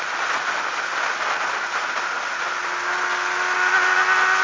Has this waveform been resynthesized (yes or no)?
no